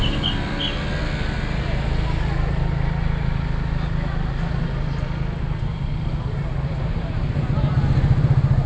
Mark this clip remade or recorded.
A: recorded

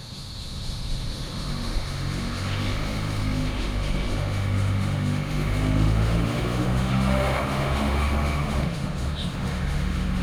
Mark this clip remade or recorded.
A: remade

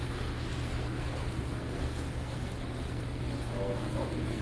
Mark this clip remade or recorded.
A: remade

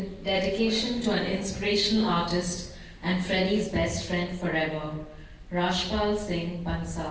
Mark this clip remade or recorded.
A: recorded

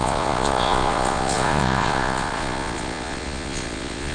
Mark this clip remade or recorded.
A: remade